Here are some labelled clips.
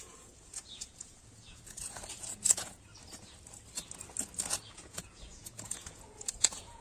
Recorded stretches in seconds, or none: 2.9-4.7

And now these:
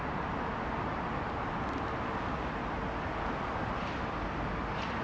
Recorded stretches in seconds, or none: 0.0-5.0

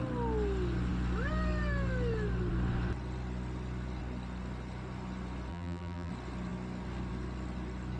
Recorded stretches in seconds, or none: 0.0-5.5; 6.1-8.0

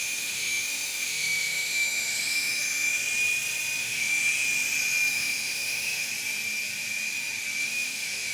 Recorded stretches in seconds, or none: 3.0-3.8; 4.2-5.1; 6.1-7.6

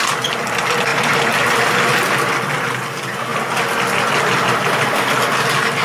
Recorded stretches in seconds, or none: 0.0-5.8

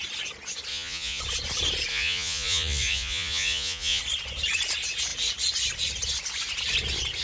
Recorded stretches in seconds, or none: 0.0-0.7; 1.2-1.9; 4.0-7.2

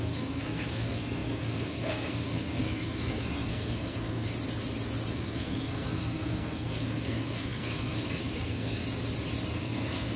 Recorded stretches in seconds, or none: 4.3-5.1; 8.8-9.5

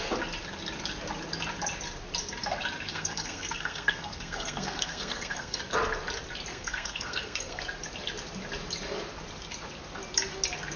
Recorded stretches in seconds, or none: 0.0-2.9; 5.6-6.5; 7.6-10.8